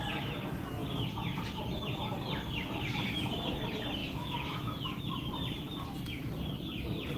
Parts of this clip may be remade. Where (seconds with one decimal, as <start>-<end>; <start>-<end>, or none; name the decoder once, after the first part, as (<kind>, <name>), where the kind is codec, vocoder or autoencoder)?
4.0-5.0 (autoencoder, DAC-VAE)